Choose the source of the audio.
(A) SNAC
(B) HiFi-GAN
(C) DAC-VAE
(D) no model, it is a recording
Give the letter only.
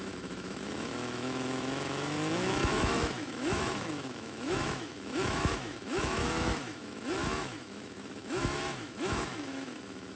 C